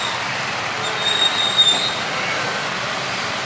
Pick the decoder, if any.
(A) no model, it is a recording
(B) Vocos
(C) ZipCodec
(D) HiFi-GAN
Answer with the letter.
A